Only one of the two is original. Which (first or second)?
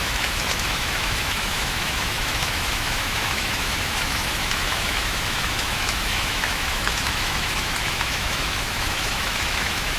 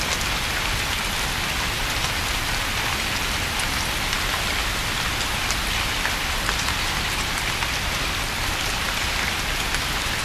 second